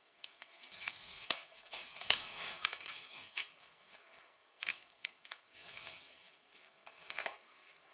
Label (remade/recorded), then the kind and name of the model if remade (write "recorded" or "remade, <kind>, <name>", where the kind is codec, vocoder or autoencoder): remade, codec, SNAC